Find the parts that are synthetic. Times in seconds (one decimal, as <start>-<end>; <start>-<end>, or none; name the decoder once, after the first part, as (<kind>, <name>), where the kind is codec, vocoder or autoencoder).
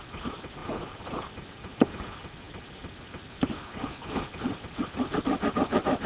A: none